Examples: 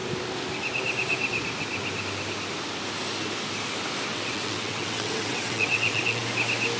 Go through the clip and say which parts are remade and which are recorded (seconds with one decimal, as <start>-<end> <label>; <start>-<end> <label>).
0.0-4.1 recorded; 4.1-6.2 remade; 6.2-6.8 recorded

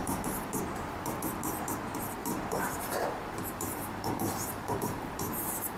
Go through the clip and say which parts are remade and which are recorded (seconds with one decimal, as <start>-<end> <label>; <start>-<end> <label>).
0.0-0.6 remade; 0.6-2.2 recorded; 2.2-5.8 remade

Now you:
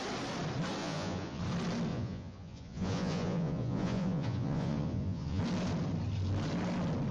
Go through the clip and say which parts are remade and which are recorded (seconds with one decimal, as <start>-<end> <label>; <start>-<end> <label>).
0.0-0.8 recorded; 0.8-1.4 remade; 1.4-1.9 recorded; 1.9-5.4 remade; 5.4-7.1 recorded

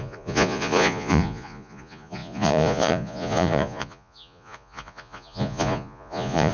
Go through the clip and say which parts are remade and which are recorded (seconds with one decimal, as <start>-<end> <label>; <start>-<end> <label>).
0.0-6.5 remade

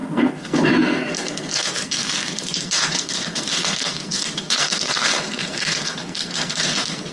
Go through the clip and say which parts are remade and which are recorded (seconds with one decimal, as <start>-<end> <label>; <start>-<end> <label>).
0.0-7.1 remade

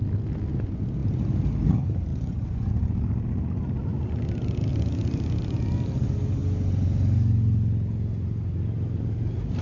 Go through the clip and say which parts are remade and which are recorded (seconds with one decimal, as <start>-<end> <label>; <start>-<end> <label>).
0.0-2.1 recorded; 2.1-2.7 remade; 2.7-9.6 recorded

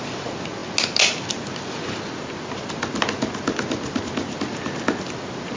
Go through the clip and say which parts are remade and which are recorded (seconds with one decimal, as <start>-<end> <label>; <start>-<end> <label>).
0.0-5.6 recorded